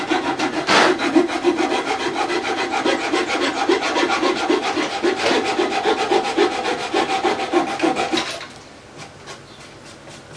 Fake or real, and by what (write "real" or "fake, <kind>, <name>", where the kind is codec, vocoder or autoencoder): fake, vocoder, BigVGAN v2